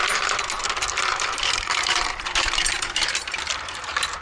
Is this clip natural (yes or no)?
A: no